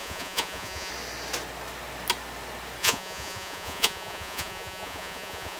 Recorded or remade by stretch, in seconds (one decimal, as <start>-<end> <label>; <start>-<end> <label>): 0.0-0.9 remade; 0.9-2.8 recorded; 2.8-5.6 remade

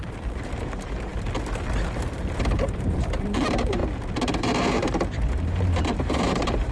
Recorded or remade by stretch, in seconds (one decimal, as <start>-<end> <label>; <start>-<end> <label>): 0.0-1.1 remade; 1.1-2.4 recorded; 2.4-3.8 remade; 3.8-4.4 recorded; 4.4-6.7 remade

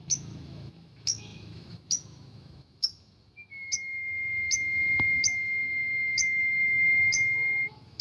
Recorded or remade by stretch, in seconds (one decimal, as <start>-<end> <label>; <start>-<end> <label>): 0.0-8.0 remade

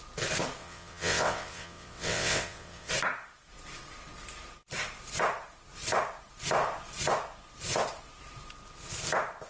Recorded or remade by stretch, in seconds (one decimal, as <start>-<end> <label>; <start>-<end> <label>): 0.0-0.6 recorded; 0.6-2.9 remade; 2.9-9.5 recorded